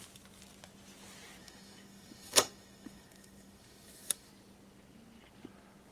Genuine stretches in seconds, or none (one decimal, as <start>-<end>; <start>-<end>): 0.0-1.4; 4.3-5.9